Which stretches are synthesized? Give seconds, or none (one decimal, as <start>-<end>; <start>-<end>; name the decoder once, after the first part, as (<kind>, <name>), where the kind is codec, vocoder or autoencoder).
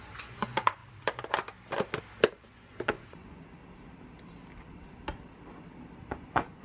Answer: 0.0-0.8 (vocoder, Vocos); 2.3-3.6; 6.1-6.6